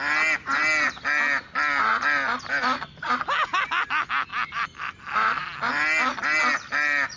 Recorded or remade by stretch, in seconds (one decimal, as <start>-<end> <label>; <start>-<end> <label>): 0.0-7.2 recorded